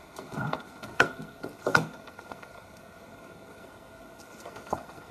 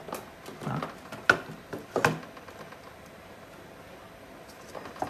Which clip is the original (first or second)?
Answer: second